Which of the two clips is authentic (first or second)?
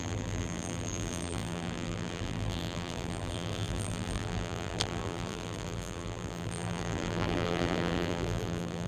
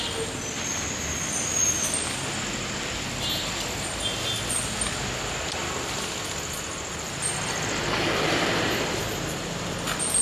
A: second